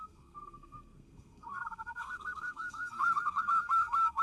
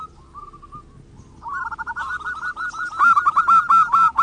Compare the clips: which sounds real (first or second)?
second